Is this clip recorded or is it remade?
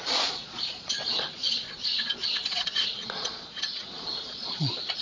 remade